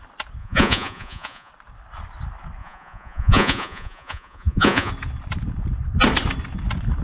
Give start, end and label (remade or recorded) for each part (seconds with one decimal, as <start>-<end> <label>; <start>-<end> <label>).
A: 0.0-0.4 recorded; 0.4-1.5 remade; 1.5-2.6 recorded; 2.6-4.9 remade; 4.9-7.0 recorded